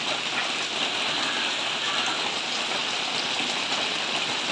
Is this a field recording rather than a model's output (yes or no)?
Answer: yes